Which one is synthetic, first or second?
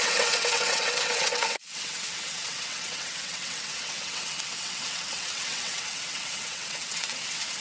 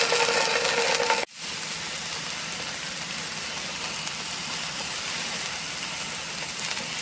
first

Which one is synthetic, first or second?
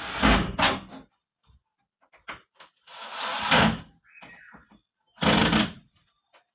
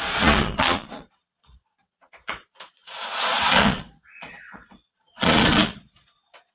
second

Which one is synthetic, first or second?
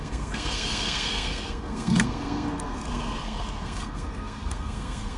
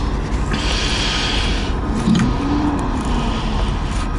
first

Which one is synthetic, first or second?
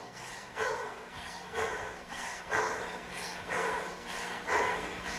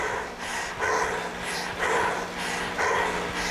first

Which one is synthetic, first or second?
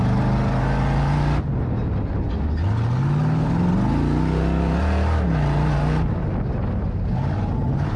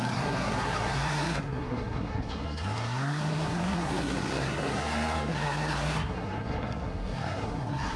second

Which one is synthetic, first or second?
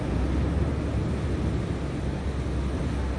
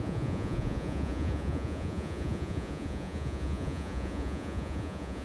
second